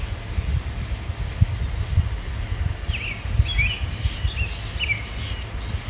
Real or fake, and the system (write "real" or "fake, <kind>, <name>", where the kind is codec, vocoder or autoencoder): real